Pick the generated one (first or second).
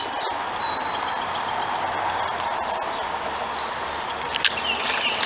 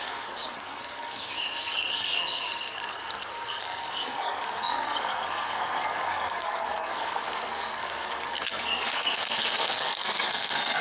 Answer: second